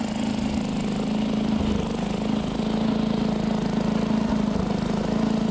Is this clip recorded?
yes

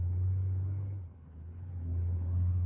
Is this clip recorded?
no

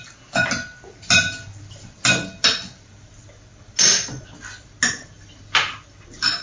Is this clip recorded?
yes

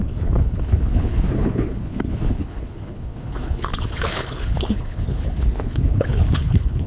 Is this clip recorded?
no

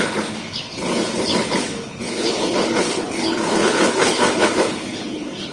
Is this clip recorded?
no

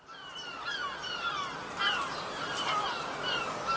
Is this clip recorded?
yes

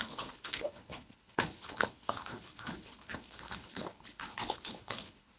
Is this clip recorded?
no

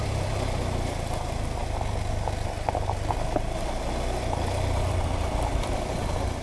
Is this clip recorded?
yes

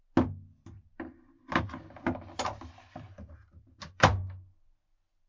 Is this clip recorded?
yes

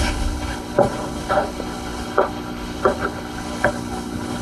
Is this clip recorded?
no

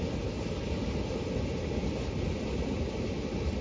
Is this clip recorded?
yes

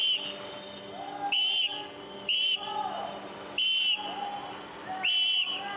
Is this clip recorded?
yes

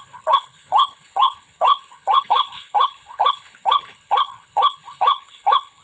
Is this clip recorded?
no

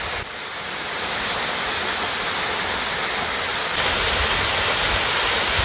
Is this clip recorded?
yes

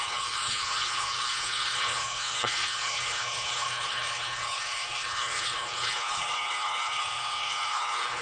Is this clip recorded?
no